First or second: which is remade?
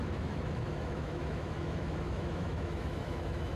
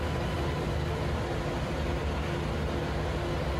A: first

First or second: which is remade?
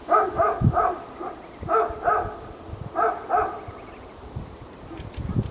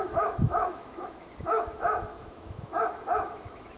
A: second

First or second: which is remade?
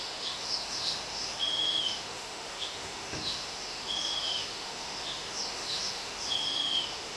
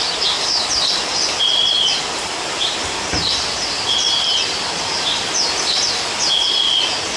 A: first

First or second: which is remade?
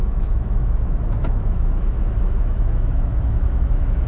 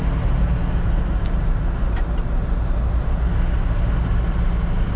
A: first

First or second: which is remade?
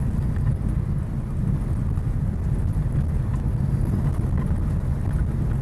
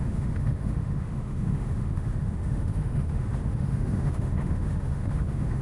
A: second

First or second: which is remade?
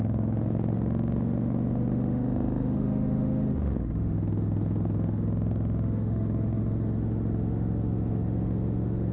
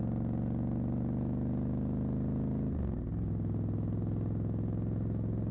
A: first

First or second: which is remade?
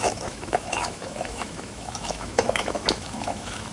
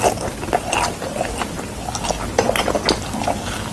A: first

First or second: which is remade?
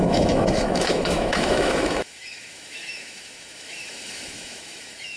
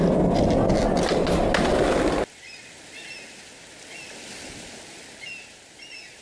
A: first